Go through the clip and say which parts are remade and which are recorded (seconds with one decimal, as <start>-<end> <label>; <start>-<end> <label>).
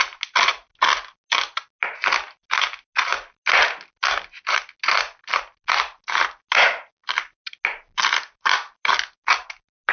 0.0-9.9 recorded